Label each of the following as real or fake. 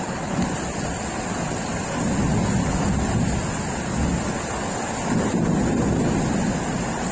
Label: real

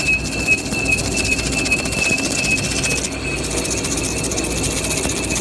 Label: real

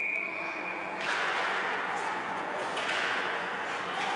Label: fake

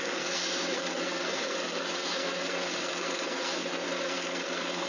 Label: fake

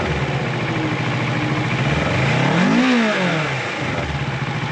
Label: real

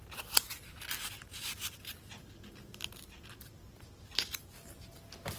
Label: real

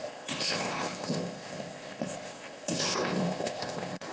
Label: fake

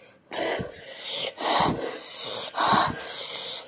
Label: real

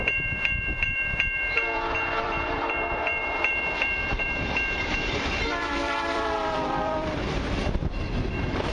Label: fake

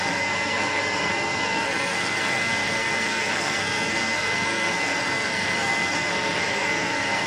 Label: fake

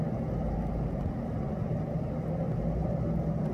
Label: real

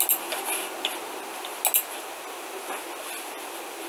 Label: real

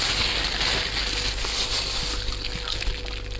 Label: real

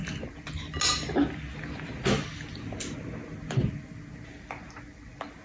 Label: real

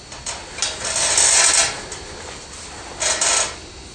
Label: real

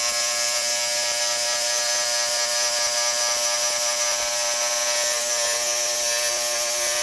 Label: real